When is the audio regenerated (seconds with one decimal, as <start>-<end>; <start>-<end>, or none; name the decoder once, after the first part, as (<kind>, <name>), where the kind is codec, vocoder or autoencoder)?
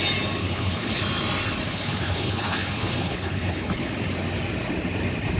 0.4-1.0 (codec, HILCodec); 1.7-3.9